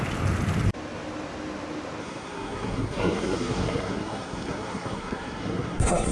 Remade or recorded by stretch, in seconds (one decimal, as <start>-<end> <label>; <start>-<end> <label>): 0.0-2.0 recorded; 2.0-6.1 remade